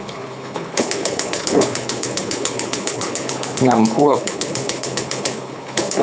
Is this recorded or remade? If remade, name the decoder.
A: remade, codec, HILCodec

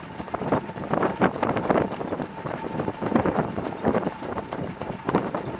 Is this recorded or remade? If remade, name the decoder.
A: remade, vocoder, BigVGAN v2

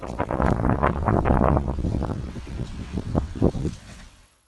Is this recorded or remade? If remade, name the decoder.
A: remade, vocoder, WaveNeXt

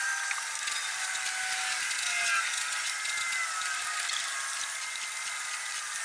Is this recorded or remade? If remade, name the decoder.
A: recorded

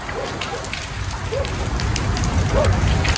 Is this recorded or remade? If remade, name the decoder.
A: recorded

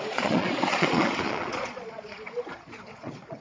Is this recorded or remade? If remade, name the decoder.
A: remade, vocoder, Vocos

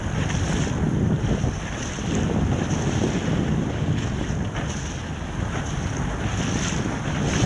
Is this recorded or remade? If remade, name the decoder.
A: recorded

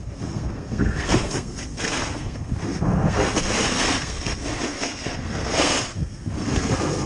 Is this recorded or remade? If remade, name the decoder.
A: remade, codec, SNAC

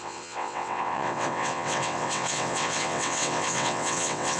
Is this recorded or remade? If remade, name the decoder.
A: remade, vocoder, WaveNeXt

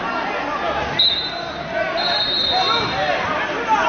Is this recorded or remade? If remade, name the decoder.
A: recorded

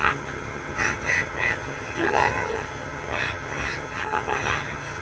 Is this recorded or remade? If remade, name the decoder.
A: remade, vocoder, HiFi-GAN